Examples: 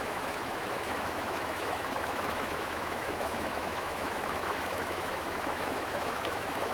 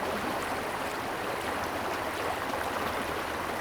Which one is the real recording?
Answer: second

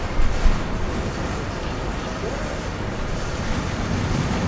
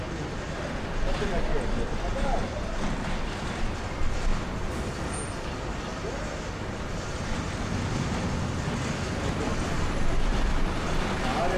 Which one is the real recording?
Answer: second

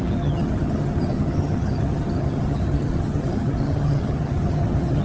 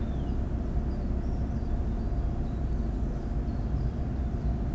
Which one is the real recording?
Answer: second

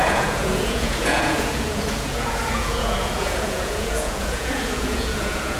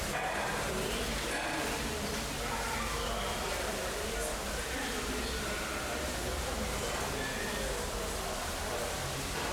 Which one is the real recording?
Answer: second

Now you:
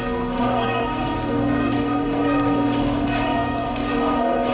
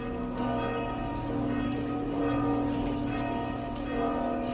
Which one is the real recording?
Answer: second